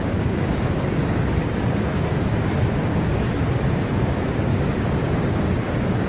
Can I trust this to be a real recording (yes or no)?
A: no